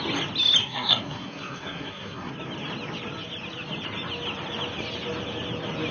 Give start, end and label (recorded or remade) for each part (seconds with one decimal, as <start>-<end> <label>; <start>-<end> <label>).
0.0-0.6 recorded; 0.6-2.3 remade; 2.3-5.9 recorded